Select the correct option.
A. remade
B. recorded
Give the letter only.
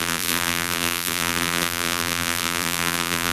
A